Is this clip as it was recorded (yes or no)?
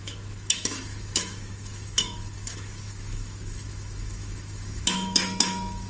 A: no